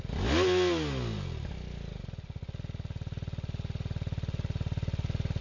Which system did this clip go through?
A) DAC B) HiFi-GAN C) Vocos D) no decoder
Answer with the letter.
D